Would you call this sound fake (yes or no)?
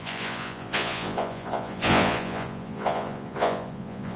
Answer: yes